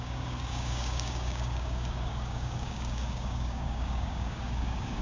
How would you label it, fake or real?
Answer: fake